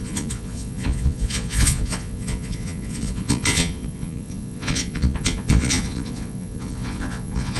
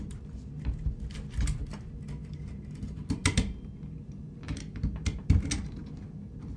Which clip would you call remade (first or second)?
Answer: first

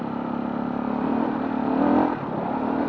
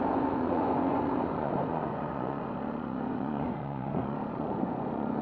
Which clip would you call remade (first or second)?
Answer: second